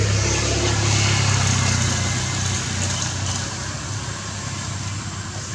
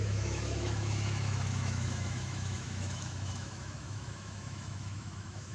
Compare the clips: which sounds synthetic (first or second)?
second